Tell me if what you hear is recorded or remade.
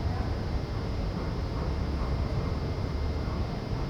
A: recorded